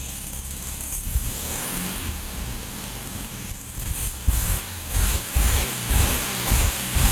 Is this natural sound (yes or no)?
no